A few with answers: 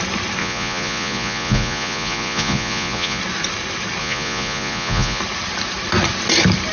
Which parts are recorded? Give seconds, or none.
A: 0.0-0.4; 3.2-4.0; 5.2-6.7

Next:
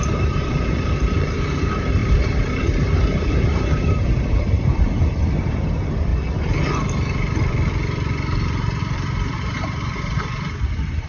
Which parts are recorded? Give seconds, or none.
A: 6.1-8.8